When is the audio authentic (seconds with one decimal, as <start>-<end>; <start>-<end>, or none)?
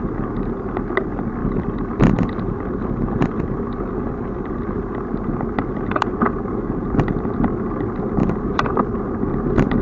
0.0-1.4; 5.0-8.2; 8.8-9.8